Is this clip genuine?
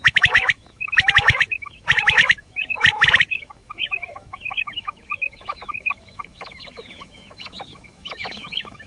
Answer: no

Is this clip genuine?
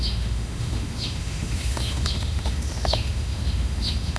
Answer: no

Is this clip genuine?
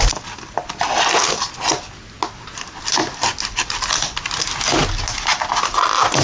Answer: yes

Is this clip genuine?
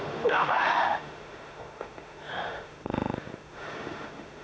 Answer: no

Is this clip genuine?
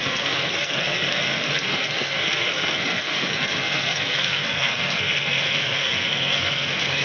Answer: no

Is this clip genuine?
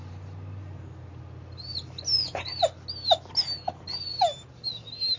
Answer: yes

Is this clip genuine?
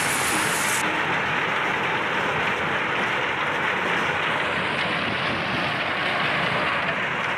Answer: yes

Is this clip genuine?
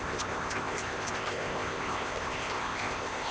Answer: no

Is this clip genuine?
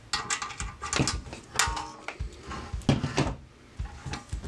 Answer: yes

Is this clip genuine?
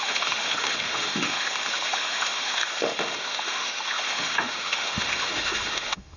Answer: no